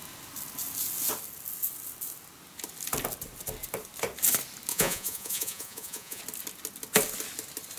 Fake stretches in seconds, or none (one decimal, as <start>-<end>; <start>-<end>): 4.7-6.2